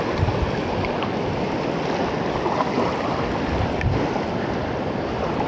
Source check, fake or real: real